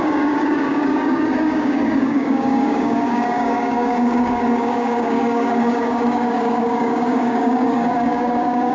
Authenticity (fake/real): fake